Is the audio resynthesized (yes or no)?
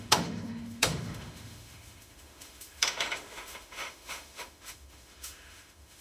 yes